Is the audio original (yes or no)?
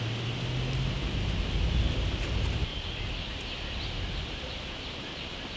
yes